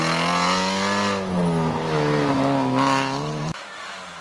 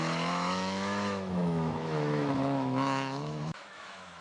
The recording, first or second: first